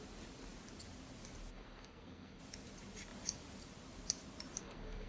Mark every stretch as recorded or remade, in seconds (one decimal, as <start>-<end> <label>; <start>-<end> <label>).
0.0-1.5 recorded; 1.5-2.4 remade; 2.4-4.6 recorded; 4.6-5.1 remade